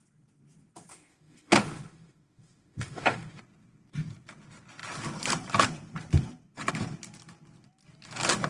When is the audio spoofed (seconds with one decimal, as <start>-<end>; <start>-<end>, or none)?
0.9-3.4